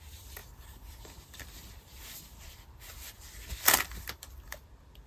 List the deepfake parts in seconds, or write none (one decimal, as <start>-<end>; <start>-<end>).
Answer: none